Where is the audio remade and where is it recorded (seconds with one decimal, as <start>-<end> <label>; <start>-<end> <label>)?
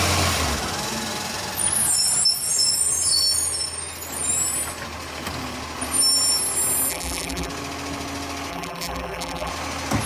0.0-6.9 recorded; 6.9-7.5 remade; 7.5-8.5 recorded; 8.5-9.5 remade; 9.5-10.1 recorded